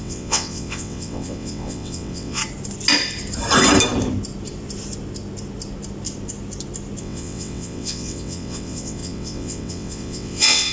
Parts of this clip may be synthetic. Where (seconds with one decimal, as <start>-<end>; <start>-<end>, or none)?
0.0-2.4; 7.0-10.7